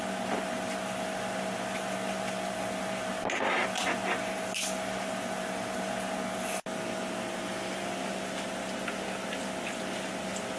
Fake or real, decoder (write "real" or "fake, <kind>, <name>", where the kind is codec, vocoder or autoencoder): real